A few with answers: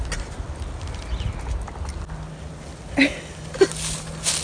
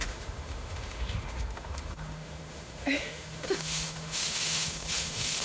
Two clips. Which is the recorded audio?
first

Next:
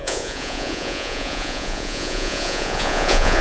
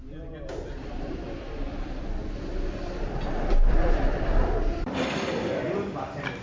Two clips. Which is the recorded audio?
second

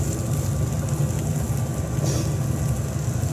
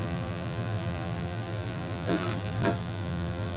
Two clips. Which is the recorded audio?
first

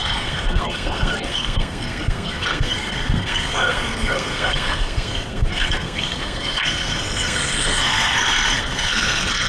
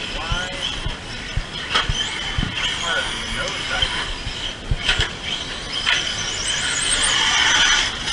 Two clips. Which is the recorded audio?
second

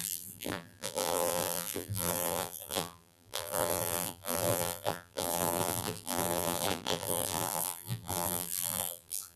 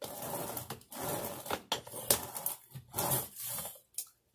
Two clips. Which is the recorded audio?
second